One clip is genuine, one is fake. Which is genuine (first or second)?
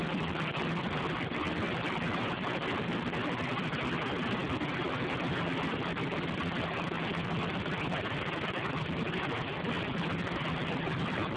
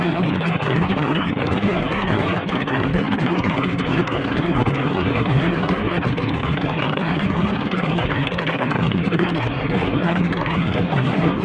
first